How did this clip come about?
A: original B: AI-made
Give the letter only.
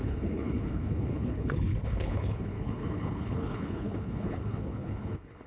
B